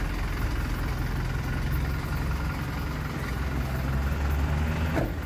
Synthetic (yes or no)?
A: no